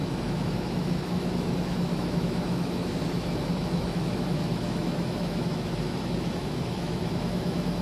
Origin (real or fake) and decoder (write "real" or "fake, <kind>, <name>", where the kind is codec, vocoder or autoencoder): fake, autoencoder, DAC-VAE